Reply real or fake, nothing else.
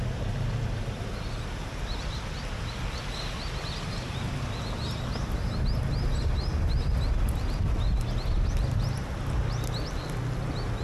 real